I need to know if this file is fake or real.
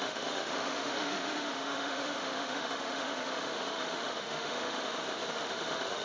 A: fake